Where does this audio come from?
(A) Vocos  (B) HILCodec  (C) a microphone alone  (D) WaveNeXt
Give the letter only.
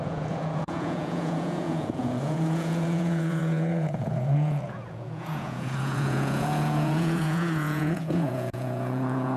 A